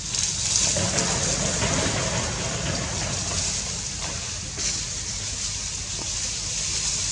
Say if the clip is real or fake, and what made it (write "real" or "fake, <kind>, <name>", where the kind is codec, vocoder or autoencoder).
real